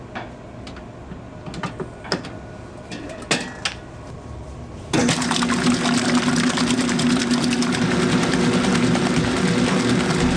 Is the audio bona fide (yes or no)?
yes